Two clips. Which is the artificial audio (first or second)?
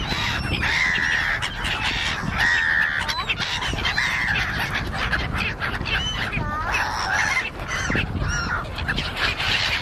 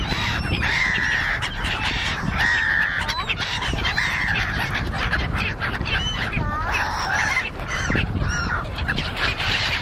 second